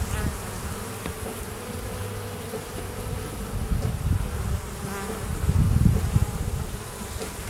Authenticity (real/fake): fake